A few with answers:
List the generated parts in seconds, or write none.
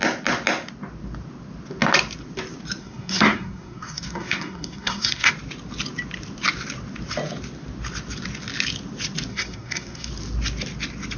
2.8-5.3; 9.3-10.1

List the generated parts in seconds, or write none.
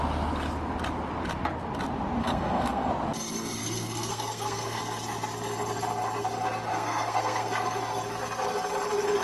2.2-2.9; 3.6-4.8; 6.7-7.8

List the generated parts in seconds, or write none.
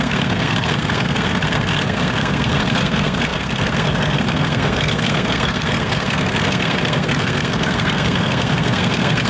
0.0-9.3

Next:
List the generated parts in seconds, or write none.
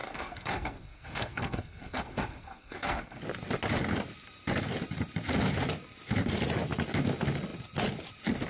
0.0-3.2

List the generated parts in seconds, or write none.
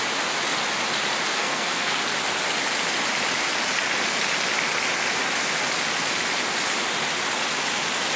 1.3-1.9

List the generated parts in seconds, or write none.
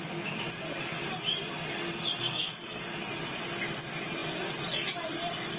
2.3-2.8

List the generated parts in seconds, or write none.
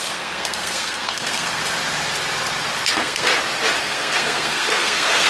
0.0-1.6; 2.9-3.3; 3.8-5.3